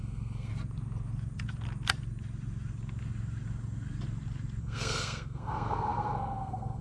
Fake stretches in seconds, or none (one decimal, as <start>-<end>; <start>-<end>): 0.0-0.5; 4.6-6.8